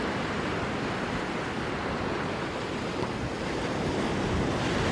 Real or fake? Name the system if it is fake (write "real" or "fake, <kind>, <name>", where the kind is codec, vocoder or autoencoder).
real